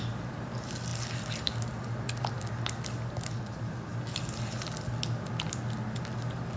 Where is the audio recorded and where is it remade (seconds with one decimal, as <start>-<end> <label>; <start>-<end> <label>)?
0.0-6.6 recorded